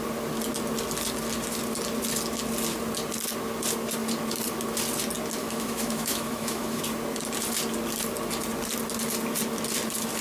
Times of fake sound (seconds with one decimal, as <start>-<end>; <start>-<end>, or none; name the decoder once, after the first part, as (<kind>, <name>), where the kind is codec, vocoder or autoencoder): 5.4-6.8 (autoencoder, DAC-VAE)